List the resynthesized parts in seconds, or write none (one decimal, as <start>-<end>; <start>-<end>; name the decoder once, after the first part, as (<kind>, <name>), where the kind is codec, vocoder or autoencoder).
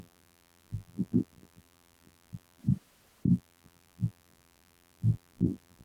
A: 0.0-2.6 (vocoder, BigVGAN v2); 3.3-5.8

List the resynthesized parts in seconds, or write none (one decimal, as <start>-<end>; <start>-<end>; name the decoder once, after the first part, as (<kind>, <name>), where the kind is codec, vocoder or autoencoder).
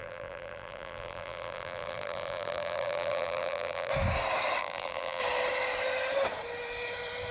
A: 0.0-3.9 (vocoder, BigVGAN v2); 4.6-5.2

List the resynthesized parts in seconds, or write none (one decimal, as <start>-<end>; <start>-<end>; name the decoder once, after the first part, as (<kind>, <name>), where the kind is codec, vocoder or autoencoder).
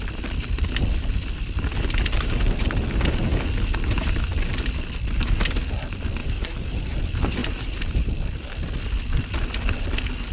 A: 6.2-7.0 (vocoder, BigVGAN v2); 7.4-8.1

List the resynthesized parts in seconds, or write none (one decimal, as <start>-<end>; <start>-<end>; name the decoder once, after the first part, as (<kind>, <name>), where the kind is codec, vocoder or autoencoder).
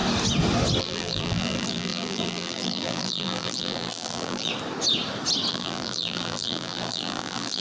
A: 0.8-4.5 (vocoder, BigVGAN v2); 5.5-7.6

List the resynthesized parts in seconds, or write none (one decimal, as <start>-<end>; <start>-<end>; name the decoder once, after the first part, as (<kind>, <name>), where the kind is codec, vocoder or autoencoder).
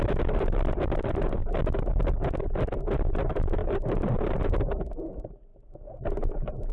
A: 0.0-2.2 (vocoder, BigVGAN v2); 3.1-6.7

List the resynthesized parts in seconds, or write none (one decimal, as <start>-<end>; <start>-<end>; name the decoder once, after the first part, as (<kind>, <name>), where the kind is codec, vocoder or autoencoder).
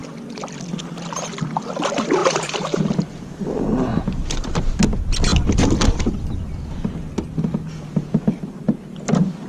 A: 2.2-3.3 (vocoder, BigVGAN v2); 3.9-4.7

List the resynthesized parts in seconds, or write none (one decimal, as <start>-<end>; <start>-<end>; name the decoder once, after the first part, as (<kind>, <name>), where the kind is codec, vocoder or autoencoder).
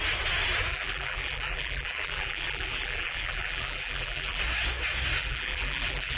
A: 0.7-4.4 (vocoder, BigVGAN v2); 5.2-6.2